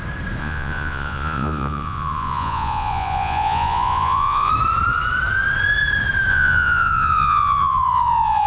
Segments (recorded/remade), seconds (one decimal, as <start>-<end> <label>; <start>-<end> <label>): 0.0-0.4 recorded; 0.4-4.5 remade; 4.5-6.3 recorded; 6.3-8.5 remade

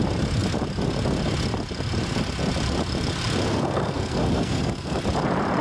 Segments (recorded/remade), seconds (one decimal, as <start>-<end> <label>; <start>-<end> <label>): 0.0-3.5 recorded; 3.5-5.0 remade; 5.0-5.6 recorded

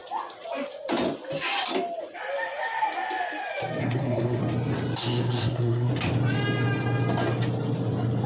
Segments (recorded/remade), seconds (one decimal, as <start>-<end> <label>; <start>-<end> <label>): 0.0-3.8 recorded; 3.8-4.4 remade; 4.4-5.0 recorded; 5.0-5.9 remade; 5.9-8.3 recorded